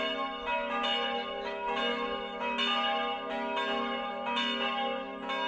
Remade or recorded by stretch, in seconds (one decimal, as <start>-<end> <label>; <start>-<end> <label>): 0.0-5.5 recorded